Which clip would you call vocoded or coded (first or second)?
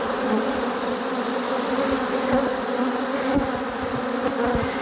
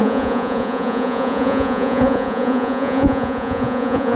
second